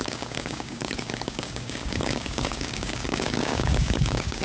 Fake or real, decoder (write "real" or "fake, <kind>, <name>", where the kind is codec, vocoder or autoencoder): fake, codec, DAC